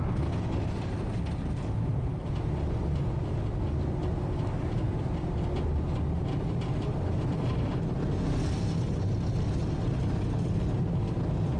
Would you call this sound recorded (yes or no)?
yes